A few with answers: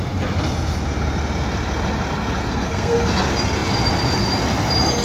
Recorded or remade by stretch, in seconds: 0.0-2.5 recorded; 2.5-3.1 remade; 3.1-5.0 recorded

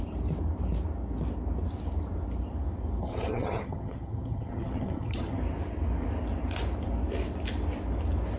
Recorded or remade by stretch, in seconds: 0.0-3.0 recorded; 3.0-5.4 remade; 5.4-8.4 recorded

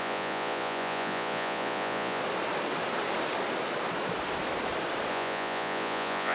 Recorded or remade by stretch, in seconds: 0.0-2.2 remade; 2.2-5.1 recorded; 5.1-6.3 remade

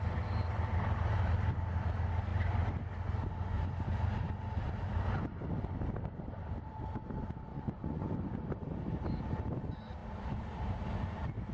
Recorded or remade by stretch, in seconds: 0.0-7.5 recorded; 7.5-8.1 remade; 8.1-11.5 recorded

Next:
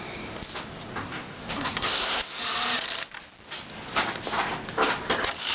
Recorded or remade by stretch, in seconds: 0.0-1.0 recorded; 1.0-2.4 remade; 2.4-5.5 recorded

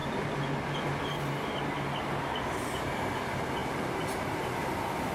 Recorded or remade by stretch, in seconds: 0.0-0.5 remade; 0.5-5.1 recorded

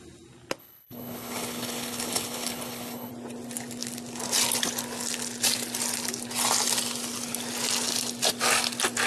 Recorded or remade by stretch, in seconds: 0.0-0.6 recorded; 0.6-3.1 remade; 3.1-9.1 recorded